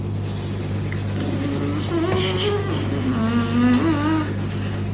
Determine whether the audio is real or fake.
real